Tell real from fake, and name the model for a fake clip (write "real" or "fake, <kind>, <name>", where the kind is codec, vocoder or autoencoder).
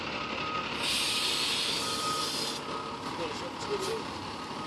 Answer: real